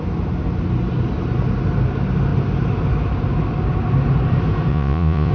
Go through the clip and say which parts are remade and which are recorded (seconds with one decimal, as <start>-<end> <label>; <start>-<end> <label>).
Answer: 0.0-4.7 recorded; 4.7-5.3 remade